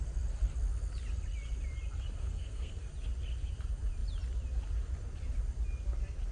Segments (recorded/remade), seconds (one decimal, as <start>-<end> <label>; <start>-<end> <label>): 0.0-2.2 recorded; 2.2-2.9 remade; 2.9-6.3 recorded